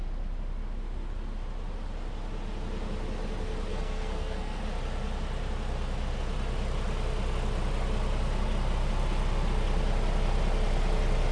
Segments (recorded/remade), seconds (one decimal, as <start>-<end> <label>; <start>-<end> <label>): 0.0-3.7 recorded; 3.7-4.6 remade; 4.6-11.3 recorded

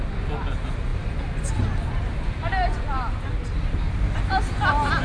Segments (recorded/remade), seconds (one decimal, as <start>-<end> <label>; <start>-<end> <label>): 0.0-5.0 recorded

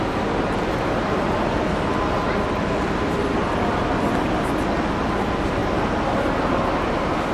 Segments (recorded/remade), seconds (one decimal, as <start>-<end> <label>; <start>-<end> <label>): 0.0-7.3 recorded

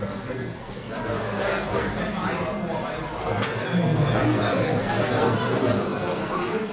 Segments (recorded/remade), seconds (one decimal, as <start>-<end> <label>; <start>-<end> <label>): 0.0-1.9 remade; 1.9-3.2 recorded; 3.2-6.7 remade